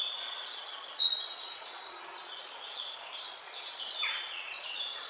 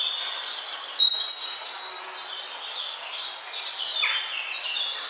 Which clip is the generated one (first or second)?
first